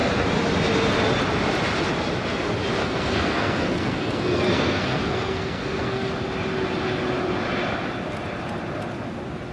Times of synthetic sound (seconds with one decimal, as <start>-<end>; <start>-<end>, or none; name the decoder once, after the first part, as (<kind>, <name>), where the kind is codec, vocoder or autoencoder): 2.8-6.1 (codec, SNAC)